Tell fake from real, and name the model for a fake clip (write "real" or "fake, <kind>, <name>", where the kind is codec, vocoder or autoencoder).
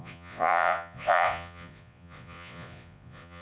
fake, vocoder, Vocos